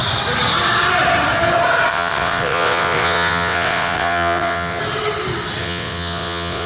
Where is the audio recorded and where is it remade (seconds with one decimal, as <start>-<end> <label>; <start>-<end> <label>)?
0.0-1.9 recorded; 1.9-4.8 remade; 4.8-5.6 recorded; 5.6-6.7 remade